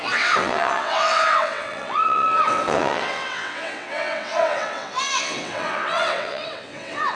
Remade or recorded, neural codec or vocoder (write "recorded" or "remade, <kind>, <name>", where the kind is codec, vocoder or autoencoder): remade, vocoder, WaveNeXt